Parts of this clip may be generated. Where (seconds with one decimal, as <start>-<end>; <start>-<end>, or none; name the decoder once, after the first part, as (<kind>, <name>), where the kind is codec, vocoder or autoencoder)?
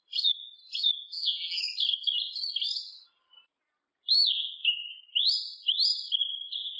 1.0-1.6 (vocoder, BigVGAN v2)